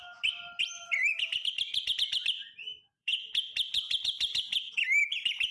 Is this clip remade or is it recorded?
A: remade